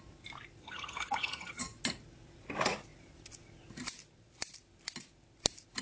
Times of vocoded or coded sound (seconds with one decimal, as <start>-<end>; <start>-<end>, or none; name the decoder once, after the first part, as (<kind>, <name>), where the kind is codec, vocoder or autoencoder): 0.6-1.6 (vocoder, HiFi-GAN)